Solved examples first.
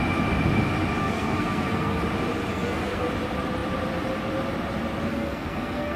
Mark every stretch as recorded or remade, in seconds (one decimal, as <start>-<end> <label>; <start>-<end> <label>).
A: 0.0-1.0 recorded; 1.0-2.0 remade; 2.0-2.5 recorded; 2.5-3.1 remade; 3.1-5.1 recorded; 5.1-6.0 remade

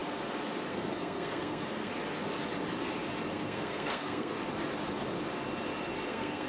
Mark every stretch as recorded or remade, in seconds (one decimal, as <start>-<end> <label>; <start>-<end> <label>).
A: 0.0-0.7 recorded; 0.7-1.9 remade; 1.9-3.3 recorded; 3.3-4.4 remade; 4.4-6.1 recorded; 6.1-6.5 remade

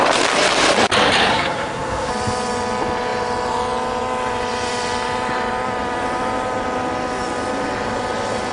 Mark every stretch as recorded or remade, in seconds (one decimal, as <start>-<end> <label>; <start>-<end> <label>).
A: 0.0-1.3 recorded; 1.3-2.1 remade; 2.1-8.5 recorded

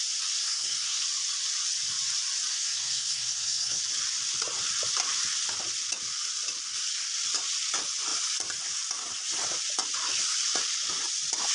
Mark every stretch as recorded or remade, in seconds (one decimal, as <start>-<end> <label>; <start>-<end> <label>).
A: 0.0-0.4 recorded; 0.4-1.0 remade; 1.0-2.5 recorded; 2.5-3.8 remade; 3.8-11.5 recorded

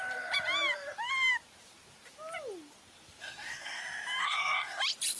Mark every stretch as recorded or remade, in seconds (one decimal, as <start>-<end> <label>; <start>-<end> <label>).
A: 0.0-3.2 recorded; 3.2-3.8 remade; 3.8-4.2 recorded; 4.2-4.8 remade; 4.8-5.2 recorded

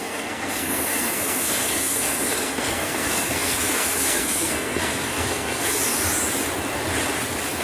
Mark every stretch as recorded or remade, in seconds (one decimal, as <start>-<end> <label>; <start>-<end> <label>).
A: 0.0-5.8 remade; 5.8-7.6 recorded